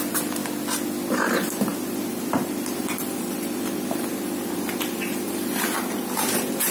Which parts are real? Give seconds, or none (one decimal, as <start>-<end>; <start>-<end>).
0.4-1.1